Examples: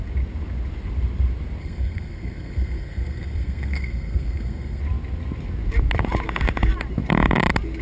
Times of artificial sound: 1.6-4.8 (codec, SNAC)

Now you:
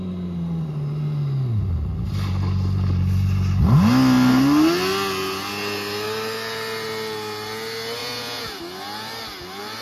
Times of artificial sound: 8.0-8.6 (vocoder, Vocos)

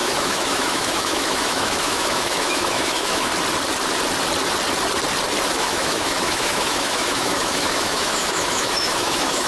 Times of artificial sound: 0.0-3.3 (autoencoder, DAC-VAE); 5.5-9.5